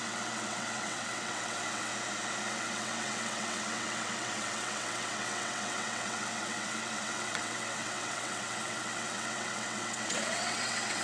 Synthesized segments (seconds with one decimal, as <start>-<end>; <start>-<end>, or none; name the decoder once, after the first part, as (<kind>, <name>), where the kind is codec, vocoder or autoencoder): 0.0-1.9 (vocoder, WaveNeXt); 2.5-11.0